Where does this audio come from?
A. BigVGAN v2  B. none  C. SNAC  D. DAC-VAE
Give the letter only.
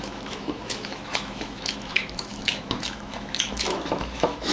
D